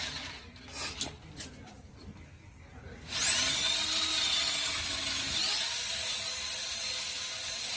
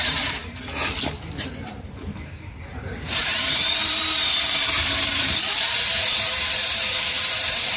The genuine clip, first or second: first